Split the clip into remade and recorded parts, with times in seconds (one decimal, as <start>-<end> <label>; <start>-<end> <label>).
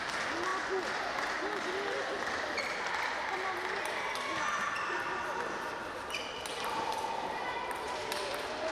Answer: 0.0-5.8 recorded; 5.8-8.7 remade